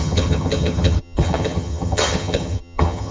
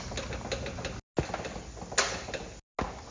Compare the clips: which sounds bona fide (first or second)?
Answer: second